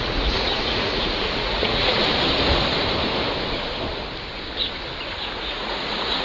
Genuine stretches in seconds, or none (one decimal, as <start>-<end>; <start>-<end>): 2.0-5.4

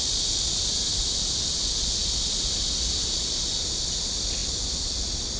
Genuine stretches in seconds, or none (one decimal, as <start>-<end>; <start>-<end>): 0.0-5.4

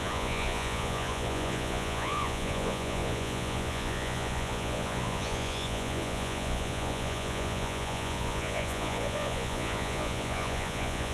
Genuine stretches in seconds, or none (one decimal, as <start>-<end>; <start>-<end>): none

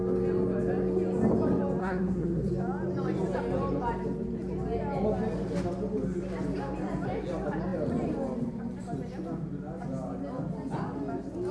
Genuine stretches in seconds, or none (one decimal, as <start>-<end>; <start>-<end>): 0.0-1.8; 2.5-11.5

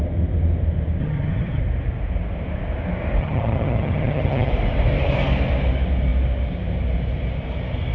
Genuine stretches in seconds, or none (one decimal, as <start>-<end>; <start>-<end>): 0.0-1.0; 1.6-3.2; 4.5-7.9

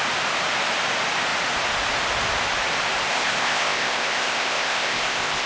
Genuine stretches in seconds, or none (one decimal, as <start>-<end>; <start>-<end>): 0.0-3.1